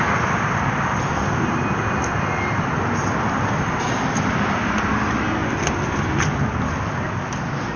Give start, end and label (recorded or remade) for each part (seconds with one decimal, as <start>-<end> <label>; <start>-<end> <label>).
0.0-7.8 recorded

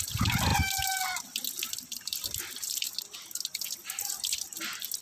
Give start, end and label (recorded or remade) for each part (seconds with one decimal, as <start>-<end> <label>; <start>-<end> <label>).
0.0-5.0 recorded

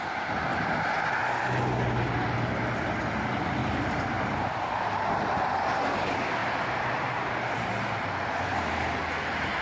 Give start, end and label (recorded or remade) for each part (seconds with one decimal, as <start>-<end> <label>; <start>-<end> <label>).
0.0-0.5 recorded; 0.5-1.1 remade; 1.1-3.6 recorded; 3.6-5.9 remade; 5.9-6.4 recorded; 6.4-7.7 remade; 7.7-9.6 recorded

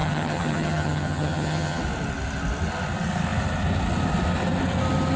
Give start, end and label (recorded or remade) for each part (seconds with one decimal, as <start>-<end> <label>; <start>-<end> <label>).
0.0-1.8 remade; 1.8-5.2 recorded

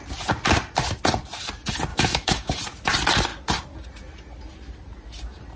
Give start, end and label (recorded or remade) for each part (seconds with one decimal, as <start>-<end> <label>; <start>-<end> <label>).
0.0-1.9 recorded; 1.9-2.5 remade; 2.5-5.6 recorded

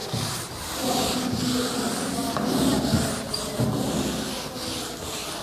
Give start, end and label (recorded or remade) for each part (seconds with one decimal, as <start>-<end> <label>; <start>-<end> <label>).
0.0-2.8 remade; 2.8-5.4 recorded

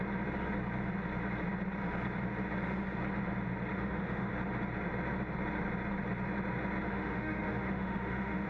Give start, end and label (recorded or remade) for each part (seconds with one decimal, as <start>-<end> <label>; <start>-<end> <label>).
0.0-3.7 recorded; 3.7-4.3 remade; 4.3-6.9 recorded; 6.9-8.5 remade

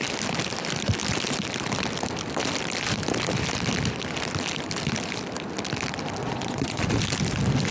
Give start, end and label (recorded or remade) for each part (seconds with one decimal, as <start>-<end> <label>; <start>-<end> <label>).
0.0-6.2 recorded; 6.2-7.0 remade; 7.0-7.7 recorded